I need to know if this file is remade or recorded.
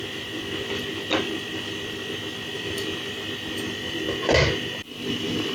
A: recorded